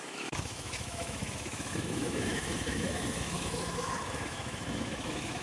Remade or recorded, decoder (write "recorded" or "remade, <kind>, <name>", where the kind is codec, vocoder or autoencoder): remade, autoencoder, DAC-VAE